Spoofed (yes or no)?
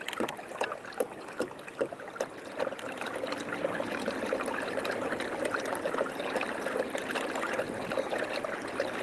no